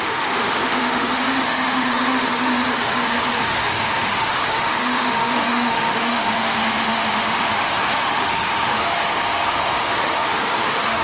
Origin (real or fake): fake